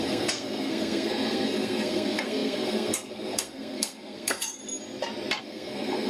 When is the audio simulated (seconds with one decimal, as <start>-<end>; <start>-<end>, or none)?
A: 0.0-4.6; 5.4-6.1